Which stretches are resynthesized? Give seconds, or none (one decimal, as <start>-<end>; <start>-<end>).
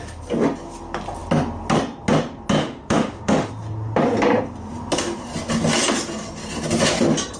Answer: 2.6-3.5